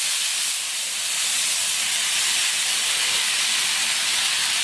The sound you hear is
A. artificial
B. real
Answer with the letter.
B